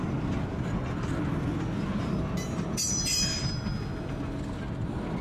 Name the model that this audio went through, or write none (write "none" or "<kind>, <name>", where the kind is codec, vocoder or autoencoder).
none